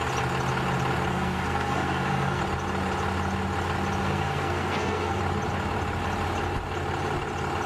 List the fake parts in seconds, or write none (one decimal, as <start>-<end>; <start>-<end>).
1.1-2.4; 4.0-5.2